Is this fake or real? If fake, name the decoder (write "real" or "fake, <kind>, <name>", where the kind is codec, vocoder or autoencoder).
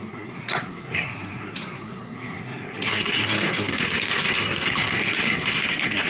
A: fake, codec, SNAC